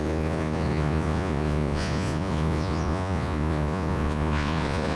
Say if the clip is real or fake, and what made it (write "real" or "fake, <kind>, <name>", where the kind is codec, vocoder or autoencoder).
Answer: fake, vocoder, Vocos